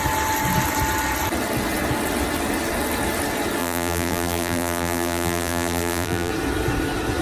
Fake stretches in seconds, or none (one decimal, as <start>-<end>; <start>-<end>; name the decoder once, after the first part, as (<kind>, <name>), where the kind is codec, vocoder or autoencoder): 3.6-6.3 (vocoder, BigVGAN v2)